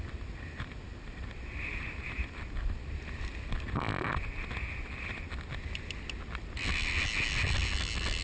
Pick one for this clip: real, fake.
real